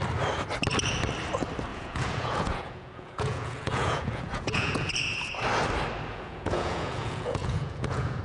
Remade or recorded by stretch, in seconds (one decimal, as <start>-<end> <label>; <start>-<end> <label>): 0.0-1.7 recorded; 1.7-4.9 remade; 4.9-6.1 recorded; 6.1-8.2 remade